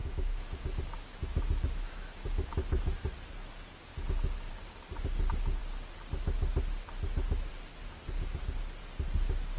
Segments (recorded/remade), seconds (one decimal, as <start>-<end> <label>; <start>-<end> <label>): 0.0-3.3 remade; 3.3-9.6 recorded